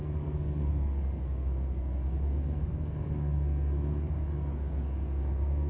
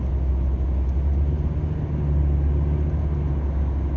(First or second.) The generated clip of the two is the first